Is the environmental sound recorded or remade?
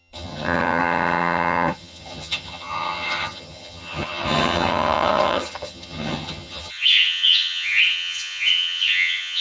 remade